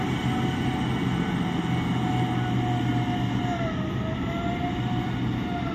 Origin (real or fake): real